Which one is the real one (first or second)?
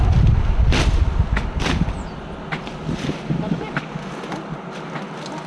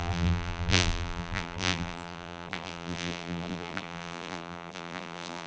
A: first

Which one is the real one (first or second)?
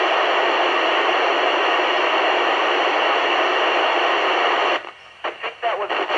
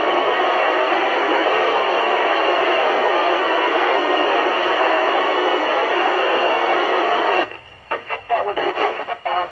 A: first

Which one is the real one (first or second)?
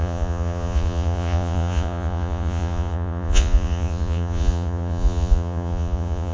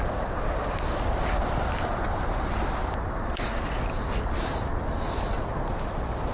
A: second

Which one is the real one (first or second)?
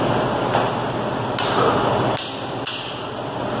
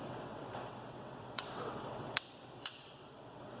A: first